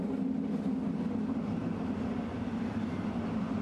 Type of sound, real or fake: real